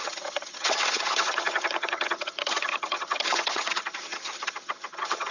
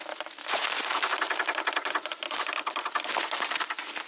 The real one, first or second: second